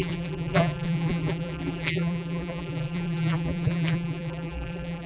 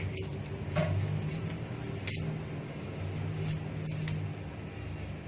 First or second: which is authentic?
second